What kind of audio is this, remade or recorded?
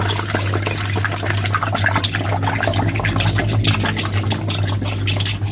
recorded